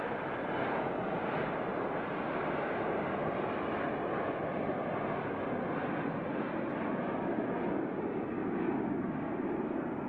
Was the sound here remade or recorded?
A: recorded